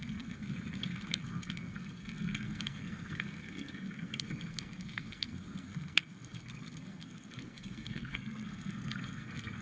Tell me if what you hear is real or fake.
fake